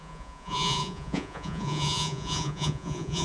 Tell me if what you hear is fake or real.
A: fake